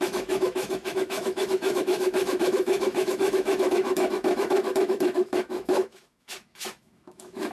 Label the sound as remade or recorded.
remade